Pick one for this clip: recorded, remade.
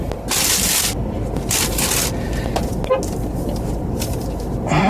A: recorded